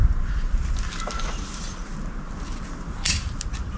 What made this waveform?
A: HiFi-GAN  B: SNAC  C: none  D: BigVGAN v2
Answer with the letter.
C